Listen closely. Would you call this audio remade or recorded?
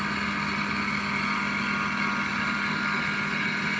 recorded